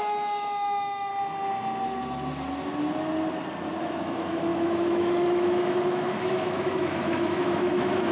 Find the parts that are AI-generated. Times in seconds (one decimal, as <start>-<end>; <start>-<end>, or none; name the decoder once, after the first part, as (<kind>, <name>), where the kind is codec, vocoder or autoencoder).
0.0-1.1 (autoencoder, DAC-VAE); 3.8-8.1